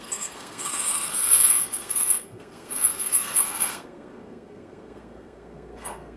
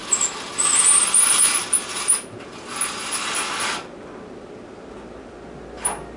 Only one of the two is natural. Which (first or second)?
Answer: second